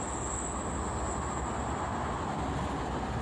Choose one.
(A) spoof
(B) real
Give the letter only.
B